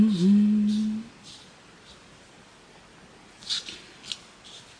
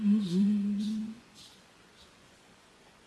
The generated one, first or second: second